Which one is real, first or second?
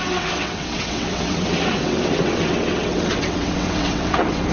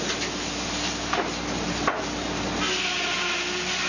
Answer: second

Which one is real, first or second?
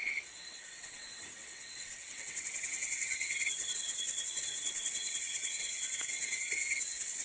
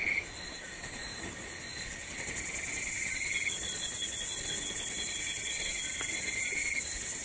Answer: second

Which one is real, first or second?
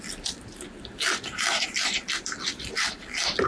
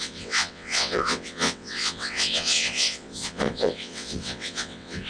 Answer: first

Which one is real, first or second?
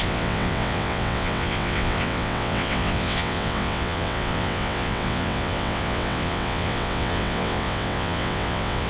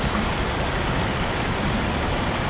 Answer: second